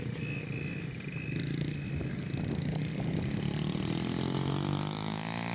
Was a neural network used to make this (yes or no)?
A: no